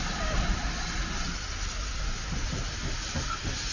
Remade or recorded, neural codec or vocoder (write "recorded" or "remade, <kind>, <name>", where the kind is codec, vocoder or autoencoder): recorded